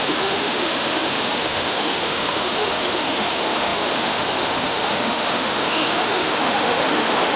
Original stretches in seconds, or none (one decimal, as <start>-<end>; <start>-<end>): none